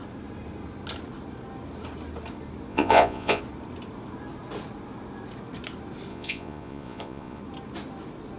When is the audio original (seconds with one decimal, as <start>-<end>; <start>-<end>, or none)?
0.0-2.7; 3.4-6.1; 7.4-8.4